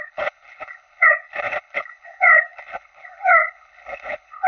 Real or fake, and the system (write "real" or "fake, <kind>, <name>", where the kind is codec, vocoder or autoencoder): fake, codec, HILCodec